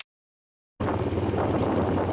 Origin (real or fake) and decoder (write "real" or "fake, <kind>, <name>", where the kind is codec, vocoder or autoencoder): real